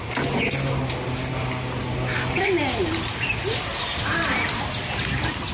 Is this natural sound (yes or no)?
yes